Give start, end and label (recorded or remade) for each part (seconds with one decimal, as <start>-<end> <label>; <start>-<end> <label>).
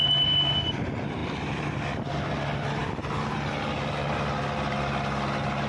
0.0-5.7 recorded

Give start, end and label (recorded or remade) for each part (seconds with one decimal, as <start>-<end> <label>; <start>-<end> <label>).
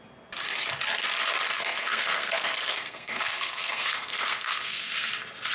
0.0-1.8 recorded; 1.8-5.1 remade; 5.1-5.5 recorded